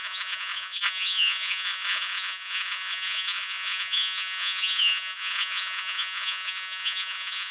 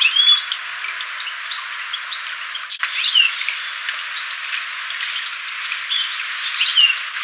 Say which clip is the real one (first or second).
second